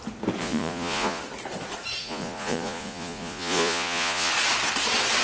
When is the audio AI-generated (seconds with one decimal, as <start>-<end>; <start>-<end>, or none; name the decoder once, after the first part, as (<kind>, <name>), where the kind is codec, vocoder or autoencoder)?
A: 0.4-1.2 (vocoder, Vocos); 2.0-4.3